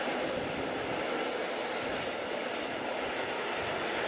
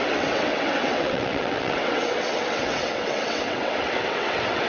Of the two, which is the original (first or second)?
first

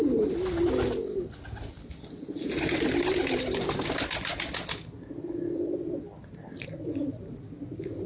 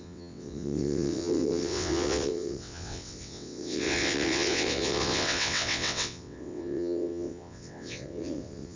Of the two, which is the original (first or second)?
first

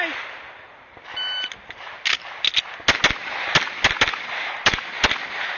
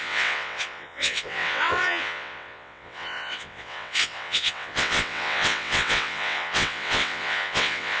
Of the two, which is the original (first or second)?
first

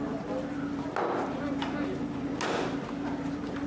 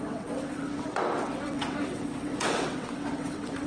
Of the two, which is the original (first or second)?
first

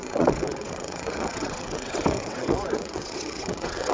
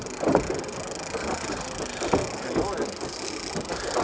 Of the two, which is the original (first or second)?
second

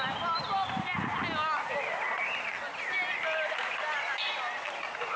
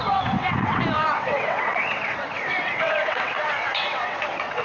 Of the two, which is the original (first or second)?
first